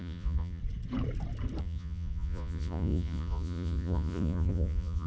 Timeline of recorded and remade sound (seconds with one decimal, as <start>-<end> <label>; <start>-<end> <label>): 0.0-0.6 remade; 0.6-1.6 recorded; 1.6-5.1 remade